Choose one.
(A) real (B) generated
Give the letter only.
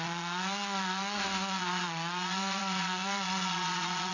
B